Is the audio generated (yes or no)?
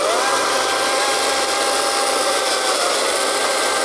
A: no